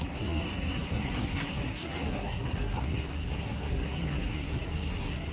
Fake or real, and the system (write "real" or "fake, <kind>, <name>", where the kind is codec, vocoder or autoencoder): fake, codec, SNAC